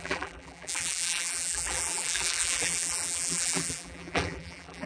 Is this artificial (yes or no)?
yes